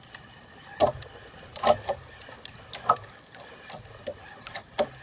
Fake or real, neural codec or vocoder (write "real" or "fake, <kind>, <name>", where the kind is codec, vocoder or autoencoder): real